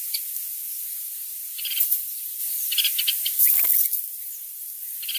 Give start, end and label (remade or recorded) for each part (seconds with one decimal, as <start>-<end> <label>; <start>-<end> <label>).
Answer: 0.0-5.2 recorded